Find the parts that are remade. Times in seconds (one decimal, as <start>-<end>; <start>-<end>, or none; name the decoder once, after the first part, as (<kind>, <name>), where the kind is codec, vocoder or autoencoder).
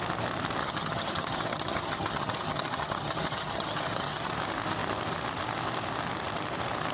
0.6-4.3 (vocoder, HiFi-GAN)